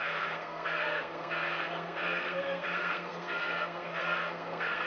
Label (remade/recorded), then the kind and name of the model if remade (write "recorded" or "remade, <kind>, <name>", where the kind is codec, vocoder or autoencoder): remade, codec, SNAC